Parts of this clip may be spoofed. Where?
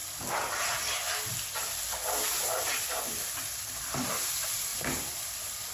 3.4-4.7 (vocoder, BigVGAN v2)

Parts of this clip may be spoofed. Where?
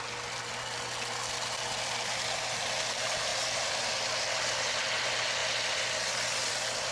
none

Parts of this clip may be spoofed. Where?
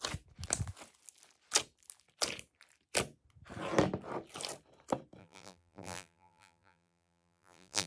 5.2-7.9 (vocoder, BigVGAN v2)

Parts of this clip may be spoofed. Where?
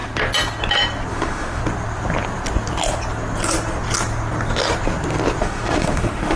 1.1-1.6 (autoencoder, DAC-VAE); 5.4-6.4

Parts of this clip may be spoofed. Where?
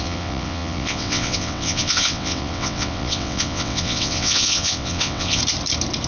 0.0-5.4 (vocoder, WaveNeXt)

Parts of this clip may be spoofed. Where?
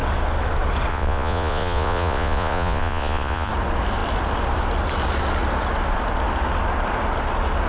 0.9-3.5 (vocoder, Vocos)